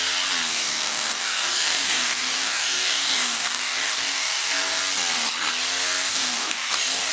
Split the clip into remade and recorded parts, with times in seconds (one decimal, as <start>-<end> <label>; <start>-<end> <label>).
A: 0.0-0.5 recorded; 0.5-4.8 remade; 4.8-6.0 recorded; 6.0-7.1 remade